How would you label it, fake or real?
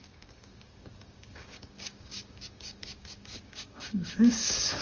fake